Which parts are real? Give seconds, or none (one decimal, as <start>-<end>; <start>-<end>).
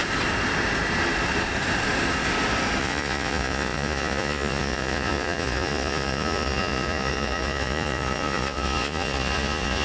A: 0.0-2.8